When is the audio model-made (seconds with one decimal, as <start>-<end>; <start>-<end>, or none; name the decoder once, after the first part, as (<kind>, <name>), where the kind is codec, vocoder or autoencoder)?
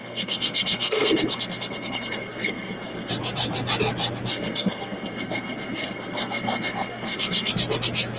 0.0-3.1 (codec, SNAC); 4.3-7.5